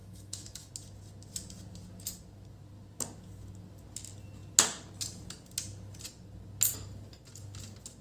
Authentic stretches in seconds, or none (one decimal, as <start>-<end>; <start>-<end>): 0.7-8.0